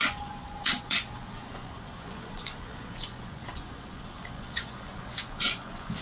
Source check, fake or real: fake